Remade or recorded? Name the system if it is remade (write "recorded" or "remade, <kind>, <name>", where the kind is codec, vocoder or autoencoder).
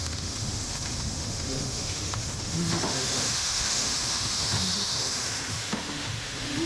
remade, autoencoder, DAC-VAE